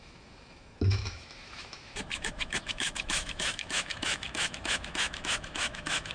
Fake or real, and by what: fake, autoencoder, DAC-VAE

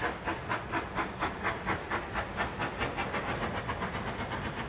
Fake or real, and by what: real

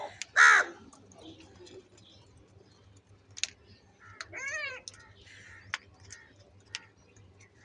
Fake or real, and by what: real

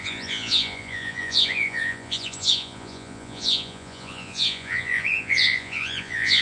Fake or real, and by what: fake, vocoder, Vocos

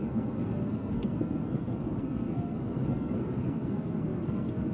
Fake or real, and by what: fake, codec, SNAC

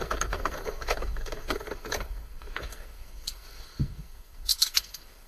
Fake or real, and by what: fake, codec, SNAC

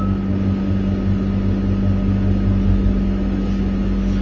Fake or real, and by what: real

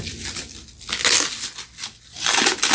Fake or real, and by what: real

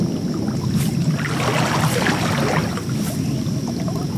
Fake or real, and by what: real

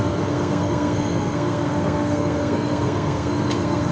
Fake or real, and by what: fake, codec, SNAC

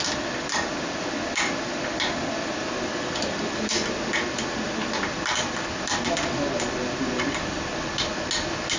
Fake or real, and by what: real